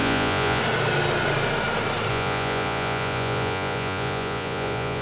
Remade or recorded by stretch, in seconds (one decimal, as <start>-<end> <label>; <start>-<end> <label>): 0.0-0.6 remade; 0.6-2.1 recorded; 2.1-5.0 remade